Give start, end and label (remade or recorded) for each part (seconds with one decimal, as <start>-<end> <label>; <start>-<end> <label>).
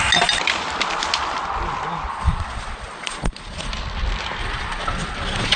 0.0-2.1 recorded; 2.1-3.7 remade; 3.7-4.4 recorded; 4.4-5.6 remade